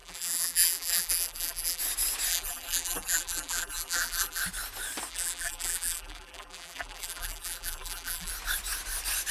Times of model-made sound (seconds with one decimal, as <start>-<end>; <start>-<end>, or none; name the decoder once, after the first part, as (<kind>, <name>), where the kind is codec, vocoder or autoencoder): 0.0-1.8 (vocoder, BigVGAN v2); 2.3-4.4; 5.1-8.3